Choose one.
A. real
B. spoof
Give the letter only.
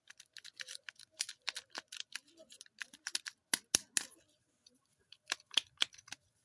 A